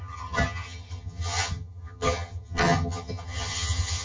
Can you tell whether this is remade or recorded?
remade